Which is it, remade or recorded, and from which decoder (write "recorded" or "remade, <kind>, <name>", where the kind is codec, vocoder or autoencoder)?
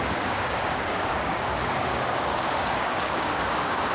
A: remade, codec, DAC